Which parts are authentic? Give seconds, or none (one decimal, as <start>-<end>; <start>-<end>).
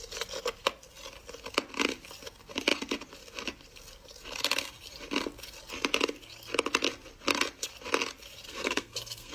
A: 0.0-8.5